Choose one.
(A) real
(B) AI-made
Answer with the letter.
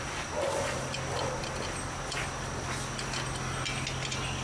A